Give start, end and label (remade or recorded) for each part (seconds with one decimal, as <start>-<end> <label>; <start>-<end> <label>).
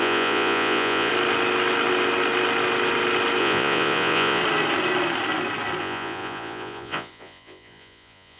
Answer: 0.0-1.1 remade; 1.1-3.4 recorded; 3.4-4.4 remade; 4.4-5.8 recorded; 5.8-8.4 remade